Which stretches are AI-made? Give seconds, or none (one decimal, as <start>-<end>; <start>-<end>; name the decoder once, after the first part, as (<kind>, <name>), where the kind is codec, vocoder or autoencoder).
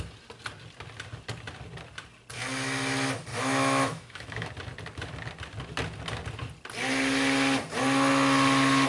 3.3-4.5 (autoencoder, DAC-VAE)